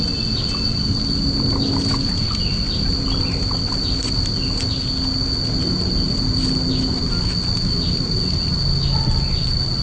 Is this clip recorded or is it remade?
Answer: recorded